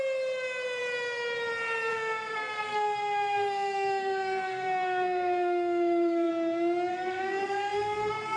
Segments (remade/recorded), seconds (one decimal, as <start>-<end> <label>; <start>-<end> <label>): 0.0-1.9 recorded; 1.9-6.3 remade; 6.3-6.9 recorded; 6.9-8.4 remade